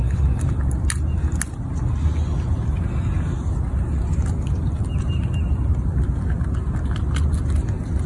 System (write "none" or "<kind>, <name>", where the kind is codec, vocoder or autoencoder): none